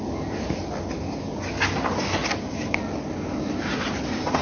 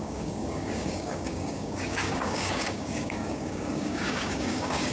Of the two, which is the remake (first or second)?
second